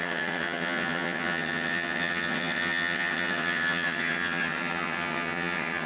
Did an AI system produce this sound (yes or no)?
yes